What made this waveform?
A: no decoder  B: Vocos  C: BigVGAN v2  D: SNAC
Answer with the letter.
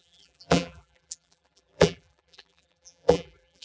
C